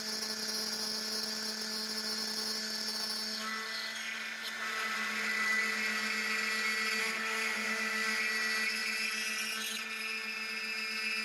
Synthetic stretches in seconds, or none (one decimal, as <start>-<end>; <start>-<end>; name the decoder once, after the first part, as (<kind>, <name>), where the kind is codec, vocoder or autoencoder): 7.0-8.2 (codec, SNAC)